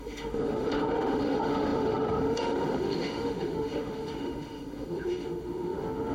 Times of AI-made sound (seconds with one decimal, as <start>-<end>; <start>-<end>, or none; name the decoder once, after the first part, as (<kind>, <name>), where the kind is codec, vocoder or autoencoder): 0.0-6.1 (autoencoder, DAC-VAE)